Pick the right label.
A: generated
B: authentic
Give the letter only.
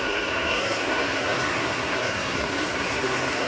A